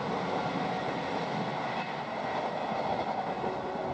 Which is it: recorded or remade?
recorded